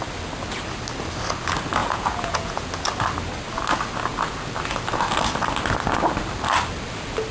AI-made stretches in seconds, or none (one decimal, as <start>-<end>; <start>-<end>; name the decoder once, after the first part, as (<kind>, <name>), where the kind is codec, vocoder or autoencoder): 1.8-2.7 (vocoder, Vocos)